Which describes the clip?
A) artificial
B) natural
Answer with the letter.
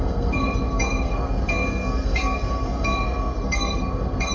A